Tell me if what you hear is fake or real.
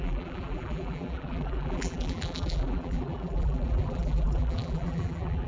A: fake